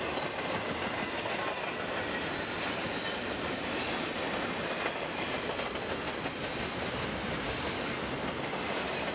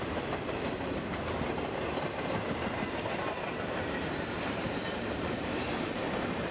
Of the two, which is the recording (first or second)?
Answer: first